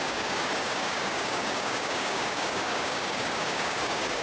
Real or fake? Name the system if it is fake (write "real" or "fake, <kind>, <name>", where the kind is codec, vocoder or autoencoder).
fake, codec, DAC